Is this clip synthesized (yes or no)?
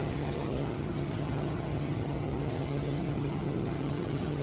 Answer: yes